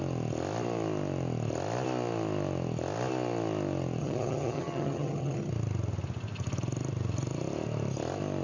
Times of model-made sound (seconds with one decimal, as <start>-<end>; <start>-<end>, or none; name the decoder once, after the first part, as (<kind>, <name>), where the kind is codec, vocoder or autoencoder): 4.0-5.5 (vocoder, HiFi-GAN)